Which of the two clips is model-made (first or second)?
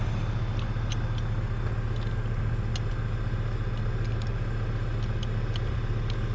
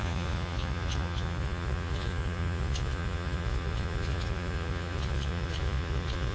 second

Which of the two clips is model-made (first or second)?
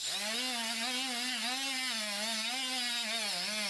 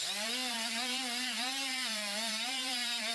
second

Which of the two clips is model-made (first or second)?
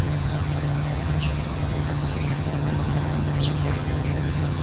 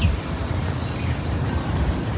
first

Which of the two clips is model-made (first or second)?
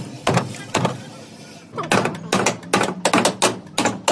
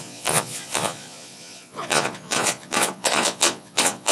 second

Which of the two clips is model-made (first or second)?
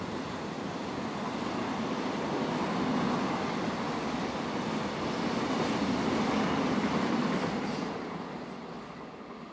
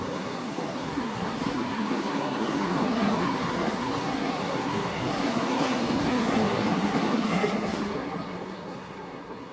second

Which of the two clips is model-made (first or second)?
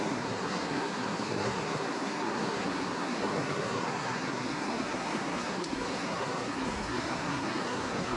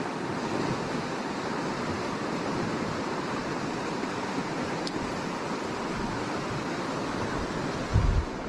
first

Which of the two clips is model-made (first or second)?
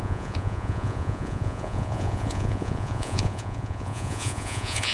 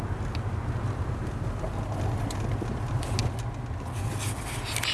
first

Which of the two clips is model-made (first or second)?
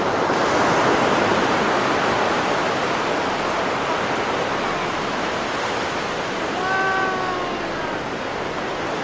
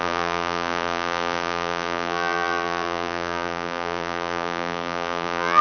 second